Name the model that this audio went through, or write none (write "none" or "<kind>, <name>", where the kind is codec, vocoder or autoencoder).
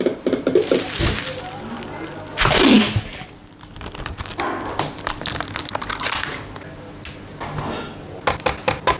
none